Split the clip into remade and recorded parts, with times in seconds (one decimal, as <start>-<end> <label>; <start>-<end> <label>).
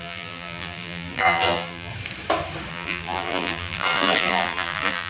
0.0-1.9 remade; 1.9-2.7 recorded; 2.7-5.1 remade